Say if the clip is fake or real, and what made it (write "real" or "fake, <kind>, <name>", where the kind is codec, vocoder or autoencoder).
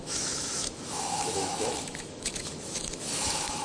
fake, autoencoder, DAC-VAE